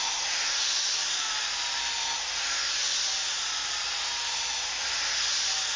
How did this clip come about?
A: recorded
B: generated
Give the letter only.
A